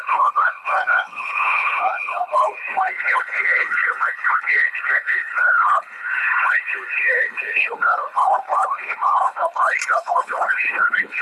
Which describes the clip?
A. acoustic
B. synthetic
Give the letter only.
B